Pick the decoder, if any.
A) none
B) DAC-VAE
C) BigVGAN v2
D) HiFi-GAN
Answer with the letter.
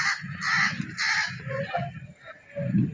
A